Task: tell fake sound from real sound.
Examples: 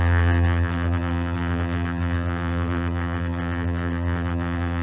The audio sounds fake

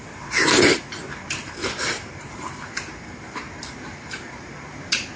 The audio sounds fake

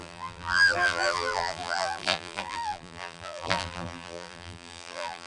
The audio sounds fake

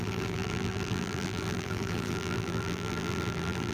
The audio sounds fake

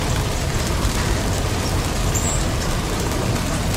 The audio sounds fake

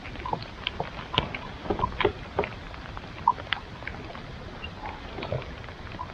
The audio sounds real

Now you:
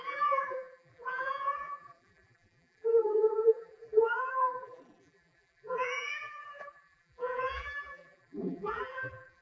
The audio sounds fake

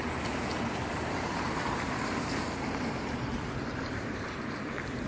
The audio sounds fake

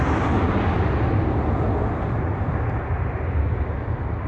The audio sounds real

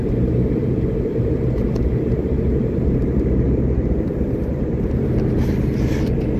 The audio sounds fake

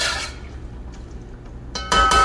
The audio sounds real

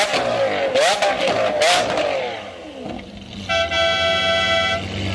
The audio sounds real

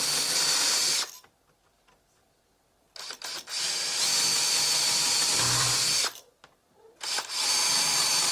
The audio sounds fake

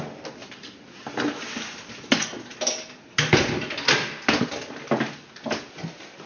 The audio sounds real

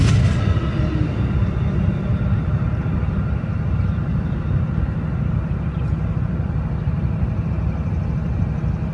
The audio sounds real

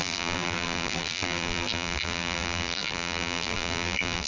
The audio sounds fake